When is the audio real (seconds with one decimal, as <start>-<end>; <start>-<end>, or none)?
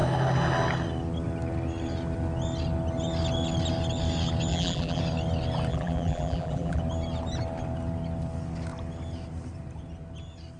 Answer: 0.0-4.5; 5.0-5.7; 6.8-10.6